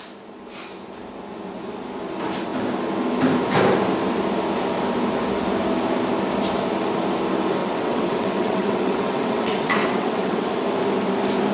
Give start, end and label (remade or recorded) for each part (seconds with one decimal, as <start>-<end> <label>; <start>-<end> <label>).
0.0-7.6 recorded; 7.6-10.5 remade; 10.5-11.5 recorded

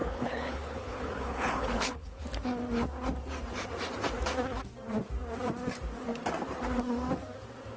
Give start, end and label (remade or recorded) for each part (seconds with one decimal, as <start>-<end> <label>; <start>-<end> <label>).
0.0-2.2 remade; 2.2-7.8 recorded

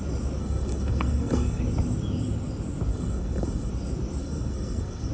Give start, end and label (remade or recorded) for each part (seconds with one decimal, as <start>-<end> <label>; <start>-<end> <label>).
0.0-0.4 recorded; 0.4-1.6 remade; 1.6-2.9 recorded; 2.9-3.7 remade; 3.7-4.2 recorded; 4.2-5.1 remade

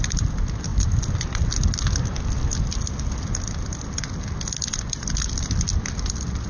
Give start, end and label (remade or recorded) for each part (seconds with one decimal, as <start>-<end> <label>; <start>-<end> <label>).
0.0-6.5 recorded